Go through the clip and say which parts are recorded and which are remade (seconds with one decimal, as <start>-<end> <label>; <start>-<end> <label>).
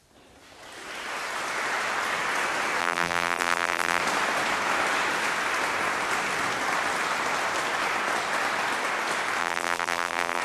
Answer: 0.0-2.8 recorded; 2.8-4.0 remade; 4.0-9.4 recorded; 9.4-10.4 remade